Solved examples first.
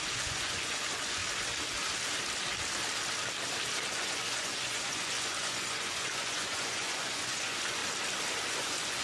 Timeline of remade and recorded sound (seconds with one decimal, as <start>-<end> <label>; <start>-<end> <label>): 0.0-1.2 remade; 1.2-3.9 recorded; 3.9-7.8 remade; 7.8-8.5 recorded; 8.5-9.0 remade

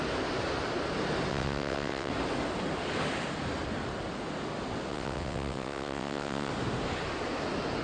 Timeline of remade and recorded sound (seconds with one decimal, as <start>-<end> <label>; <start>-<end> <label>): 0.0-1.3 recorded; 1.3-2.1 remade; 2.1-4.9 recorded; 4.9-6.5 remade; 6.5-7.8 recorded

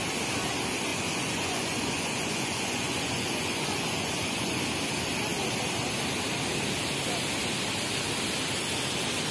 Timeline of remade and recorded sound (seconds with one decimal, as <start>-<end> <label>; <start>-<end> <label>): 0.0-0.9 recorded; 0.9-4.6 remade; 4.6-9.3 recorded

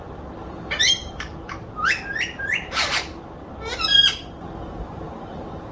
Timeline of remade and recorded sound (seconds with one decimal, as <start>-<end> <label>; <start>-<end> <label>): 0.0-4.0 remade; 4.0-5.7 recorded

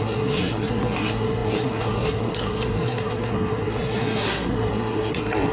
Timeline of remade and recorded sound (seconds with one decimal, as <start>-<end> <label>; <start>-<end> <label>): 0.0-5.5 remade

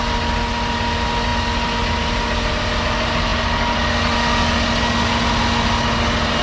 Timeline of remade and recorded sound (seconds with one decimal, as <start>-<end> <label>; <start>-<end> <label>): 0.0-6.4 recorded

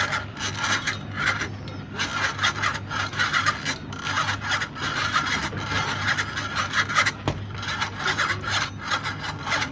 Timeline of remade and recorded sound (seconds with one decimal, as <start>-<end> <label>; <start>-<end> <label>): 0.0-9.7 recorded

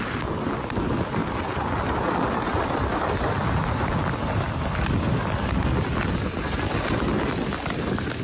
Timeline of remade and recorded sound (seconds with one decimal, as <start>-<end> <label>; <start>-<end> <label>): 0.0-8.2 recorded